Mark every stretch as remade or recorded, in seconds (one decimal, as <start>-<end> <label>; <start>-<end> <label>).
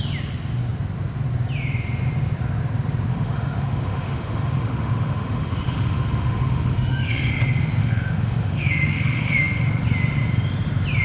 0.0-3.1 recorded; 3.1-7.3 remade; 7.3-7.8 recorded; 7.8-9.7 remade; 9.7-11.0 recorded